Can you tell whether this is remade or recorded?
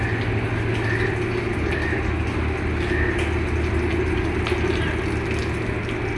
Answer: recorded